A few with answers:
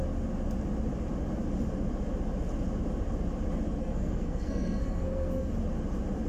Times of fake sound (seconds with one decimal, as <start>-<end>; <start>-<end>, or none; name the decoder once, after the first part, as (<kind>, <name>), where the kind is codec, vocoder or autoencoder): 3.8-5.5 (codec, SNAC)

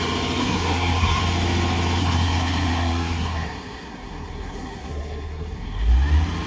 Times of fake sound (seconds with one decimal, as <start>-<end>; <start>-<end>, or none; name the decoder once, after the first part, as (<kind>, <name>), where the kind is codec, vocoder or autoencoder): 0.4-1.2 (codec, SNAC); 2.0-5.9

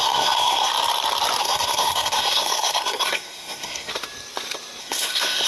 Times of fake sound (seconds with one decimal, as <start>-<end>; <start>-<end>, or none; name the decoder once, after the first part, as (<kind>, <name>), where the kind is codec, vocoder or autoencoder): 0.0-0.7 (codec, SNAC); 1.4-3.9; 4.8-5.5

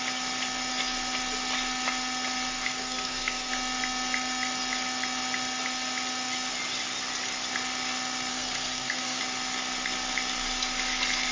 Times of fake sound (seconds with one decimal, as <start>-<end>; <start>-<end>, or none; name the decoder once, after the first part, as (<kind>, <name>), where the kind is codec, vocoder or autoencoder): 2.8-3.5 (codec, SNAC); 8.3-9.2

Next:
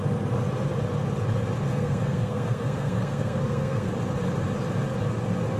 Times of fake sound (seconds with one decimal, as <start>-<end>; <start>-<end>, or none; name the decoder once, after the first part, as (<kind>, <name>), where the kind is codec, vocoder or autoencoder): 1.7-3.9 (codec, SNAC)